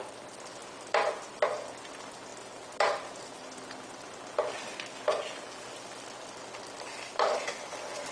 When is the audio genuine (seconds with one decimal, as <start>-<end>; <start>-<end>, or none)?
0.0-8.1